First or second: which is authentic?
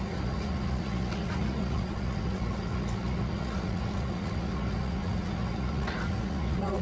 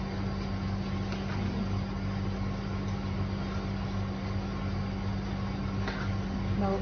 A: second